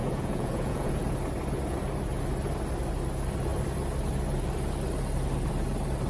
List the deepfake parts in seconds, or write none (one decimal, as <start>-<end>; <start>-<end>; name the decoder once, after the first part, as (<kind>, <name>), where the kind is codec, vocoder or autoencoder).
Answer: 0.0-0.9 (vocoder, Vocos)

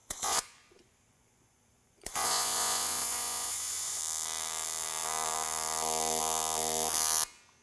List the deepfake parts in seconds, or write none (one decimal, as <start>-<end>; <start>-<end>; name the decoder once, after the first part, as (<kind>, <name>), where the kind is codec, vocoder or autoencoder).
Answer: 0.0-4.0 (vocoder, Vocos)